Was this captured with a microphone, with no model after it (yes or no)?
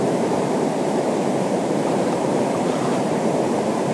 no